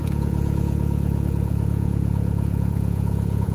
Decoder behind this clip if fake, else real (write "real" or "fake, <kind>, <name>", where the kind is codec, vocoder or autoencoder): fake, vocoder, Vocos